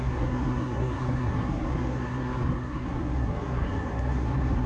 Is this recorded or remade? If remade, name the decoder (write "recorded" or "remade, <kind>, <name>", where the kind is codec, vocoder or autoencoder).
remade, codec, SNAC